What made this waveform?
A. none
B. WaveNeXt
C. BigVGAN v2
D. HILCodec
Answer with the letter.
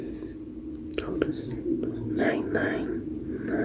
A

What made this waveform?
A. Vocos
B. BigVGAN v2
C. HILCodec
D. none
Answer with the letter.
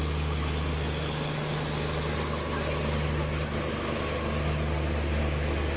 D